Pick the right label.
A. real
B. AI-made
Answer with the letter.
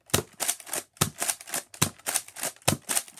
A